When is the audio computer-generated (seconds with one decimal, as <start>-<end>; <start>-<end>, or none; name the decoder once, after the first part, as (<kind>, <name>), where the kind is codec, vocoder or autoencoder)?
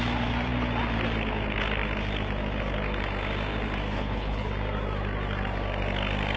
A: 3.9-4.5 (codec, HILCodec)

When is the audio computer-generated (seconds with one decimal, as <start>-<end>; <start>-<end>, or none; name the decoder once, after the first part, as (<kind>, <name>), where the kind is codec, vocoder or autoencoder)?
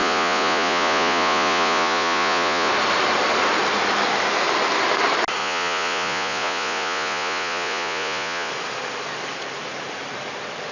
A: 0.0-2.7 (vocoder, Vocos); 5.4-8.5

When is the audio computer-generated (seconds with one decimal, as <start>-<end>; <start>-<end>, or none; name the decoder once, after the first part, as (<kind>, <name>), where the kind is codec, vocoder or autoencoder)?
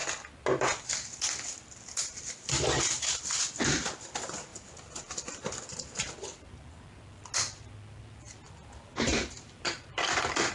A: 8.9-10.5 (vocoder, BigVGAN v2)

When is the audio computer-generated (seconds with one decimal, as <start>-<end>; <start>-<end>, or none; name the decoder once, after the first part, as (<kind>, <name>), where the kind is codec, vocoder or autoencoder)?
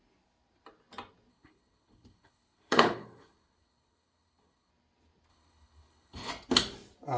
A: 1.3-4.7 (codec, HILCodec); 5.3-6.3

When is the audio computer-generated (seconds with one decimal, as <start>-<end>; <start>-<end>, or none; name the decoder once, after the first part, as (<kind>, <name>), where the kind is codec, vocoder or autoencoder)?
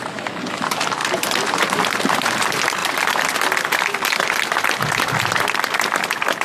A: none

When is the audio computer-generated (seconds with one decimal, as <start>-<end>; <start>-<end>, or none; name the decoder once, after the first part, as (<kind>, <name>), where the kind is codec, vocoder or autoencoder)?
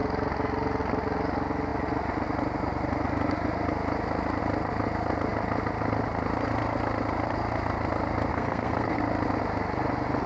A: 8.3-9.0 (codec, SNAC)